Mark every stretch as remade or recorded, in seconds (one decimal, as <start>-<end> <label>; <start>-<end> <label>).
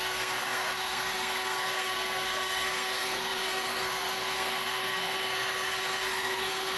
0.0-6.8 remade